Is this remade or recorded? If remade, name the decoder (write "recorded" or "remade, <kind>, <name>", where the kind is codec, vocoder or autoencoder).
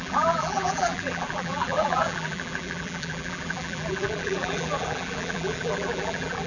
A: remade, vocoder, BigVGAN v2